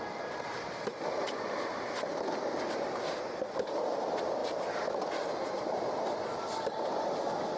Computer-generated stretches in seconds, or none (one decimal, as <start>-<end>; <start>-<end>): none